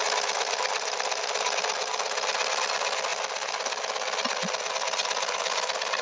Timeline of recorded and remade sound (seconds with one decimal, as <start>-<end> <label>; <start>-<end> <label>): 0.0-6.0 recorded